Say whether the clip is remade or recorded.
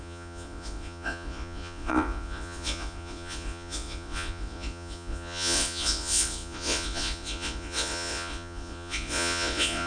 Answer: remade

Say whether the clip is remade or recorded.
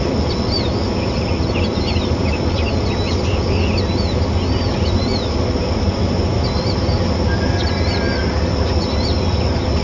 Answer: recorded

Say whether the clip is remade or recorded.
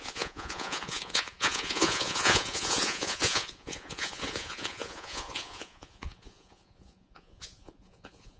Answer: remade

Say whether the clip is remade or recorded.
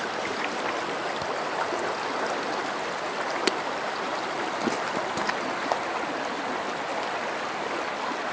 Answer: recorded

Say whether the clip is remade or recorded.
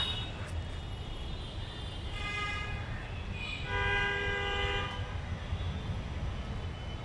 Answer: recorded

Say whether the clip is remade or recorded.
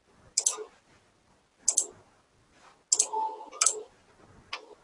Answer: recorded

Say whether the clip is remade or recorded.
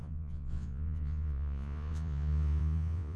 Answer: remade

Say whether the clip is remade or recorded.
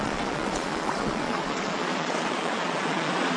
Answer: remade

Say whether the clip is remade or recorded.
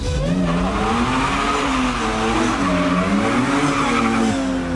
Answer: recorded